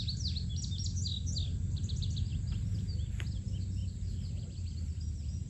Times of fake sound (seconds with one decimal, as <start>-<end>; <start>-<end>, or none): none

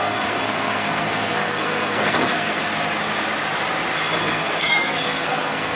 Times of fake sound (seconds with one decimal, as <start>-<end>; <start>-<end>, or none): 0.0-2.6; 4.2-5.8

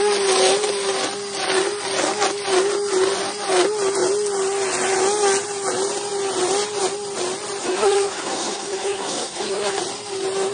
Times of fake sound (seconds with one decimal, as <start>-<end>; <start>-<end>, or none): 7.6-9.8